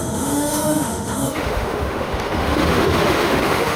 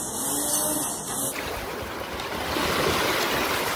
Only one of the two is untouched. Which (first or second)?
second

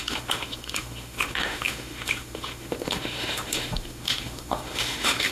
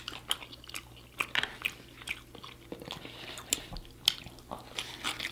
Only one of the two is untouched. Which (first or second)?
second